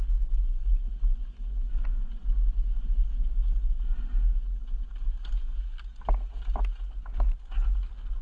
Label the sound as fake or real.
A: real